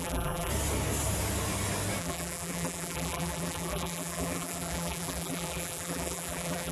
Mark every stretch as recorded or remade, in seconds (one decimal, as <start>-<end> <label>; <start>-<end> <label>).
0.0-0.5 remade; 0.5-2.0 recorded; 2.0-6.7 remade